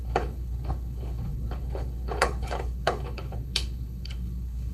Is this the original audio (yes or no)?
no